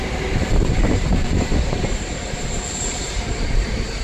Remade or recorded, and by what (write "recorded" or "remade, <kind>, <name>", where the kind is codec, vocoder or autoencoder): remade, vocoder, BigVGAN v2